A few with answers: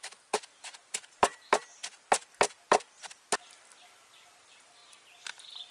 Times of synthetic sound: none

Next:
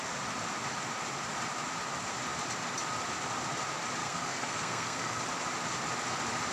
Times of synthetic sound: 4.0-5.2 (codec, SNAC)

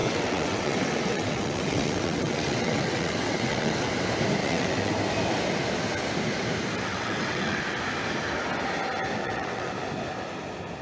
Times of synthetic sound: 0.0-3.9 (vocoder, WaveNeXt); 4.4-4.9; 6.9-7.6; 9.2-9.7

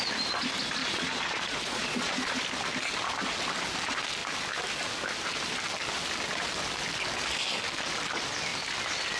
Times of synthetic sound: 0.8-2.4 (vocoder, Vocos)

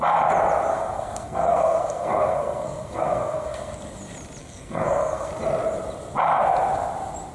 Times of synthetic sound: 0.7-3.8 (codec, SNAC); 4.4-5.3

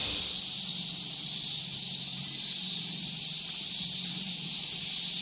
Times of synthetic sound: 2.1-5.2 (vocoder, BigVGAN v2)

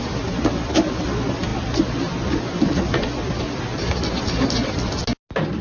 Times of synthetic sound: none

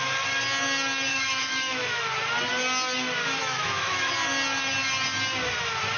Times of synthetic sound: 1.1-2.0 (autoencoder, DAC-VAE); 3.4-4.1